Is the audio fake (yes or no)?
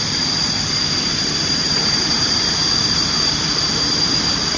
yes